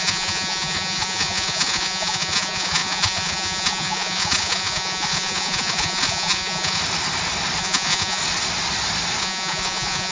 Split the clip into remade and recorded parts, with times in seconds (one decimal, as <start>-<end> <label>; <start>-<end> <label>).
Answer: 0.0-6.8 remade; 6.8-7.6 recorded; 7.6-8.2 remade; 8.2-9.2 recorded; 9.2-10.1 remade